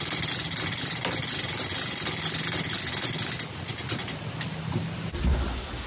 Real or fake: real